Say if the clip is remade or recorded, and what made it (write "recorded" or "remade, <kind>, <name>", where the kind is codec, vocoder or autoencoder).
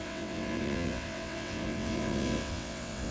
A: remade, vocoder, WaveNeXt